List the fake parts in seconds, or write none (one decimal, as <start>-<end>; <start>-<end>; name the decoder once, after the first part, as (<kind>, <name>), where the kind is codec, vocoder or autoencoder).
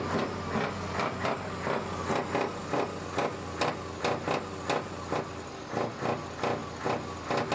none